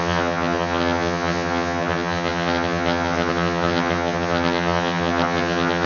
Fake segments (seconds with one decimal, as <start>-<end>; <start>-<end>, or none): 0.0-5.9